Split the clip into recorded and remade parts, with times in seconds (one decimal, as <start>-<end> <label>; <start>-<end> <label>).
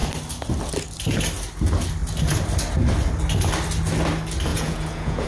0.0-4.5 recorded; 4.5-5.3 remade